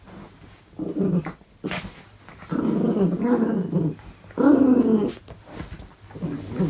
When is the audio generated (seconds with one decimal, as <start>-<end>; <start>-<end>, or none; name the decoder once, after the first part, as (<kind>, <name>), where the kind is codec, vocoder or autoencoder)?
none